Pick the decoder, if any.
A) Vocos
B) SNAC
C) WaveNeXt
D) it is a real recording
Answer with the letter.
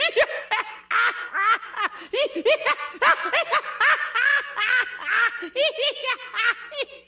D